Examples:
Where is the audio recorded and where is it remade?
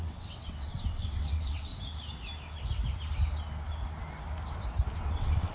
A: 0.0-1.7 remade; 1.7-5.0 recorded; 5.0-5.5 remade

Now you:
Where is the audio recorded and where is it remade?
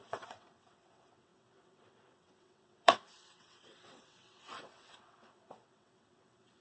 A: 0.0-6.6 remade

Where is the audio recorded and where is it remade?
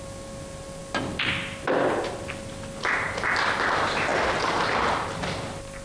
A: 0.0-5.8 recorded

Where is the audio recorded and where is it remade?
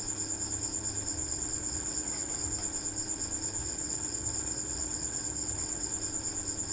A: 0.0-1.2 recorded; 1.2-2.5 remade; 2.5-3.6 recorded; 3.6-5.9 remade; 5.9-6.7 recorded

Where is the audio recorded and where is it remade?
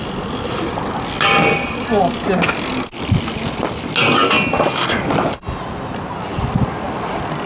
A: 0.0-7.5 recorded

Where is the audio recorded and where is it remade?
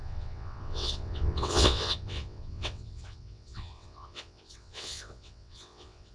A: 0.0-6.1 remade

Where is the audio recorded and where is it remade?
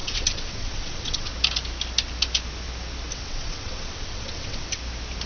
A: 0.0-1.3 remade; 1.3-3.1 recorded; 3.1-4.8 remade; 4.8-5.3 recorded